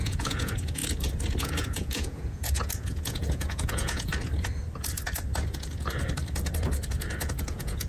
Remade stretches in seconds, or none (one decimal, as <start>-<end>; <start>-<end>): 0.0-0.8; 1.4-4.1; 7.4-7.9